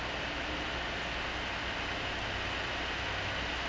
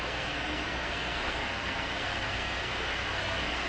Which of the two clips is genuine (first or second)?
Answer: first